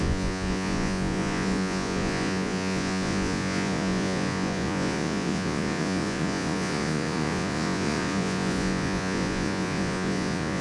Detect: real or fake fake